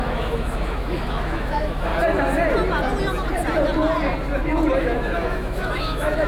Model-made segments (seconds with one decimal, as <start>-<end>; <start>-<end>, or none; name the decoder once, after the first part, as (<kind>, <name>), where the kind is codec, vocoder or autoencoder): 0.0-1.9 (autoencoder, DAC-VAE); 4.8-6.3